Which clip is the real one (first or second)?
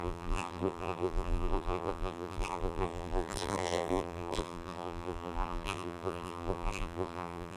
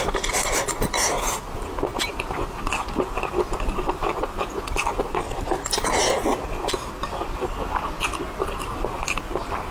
second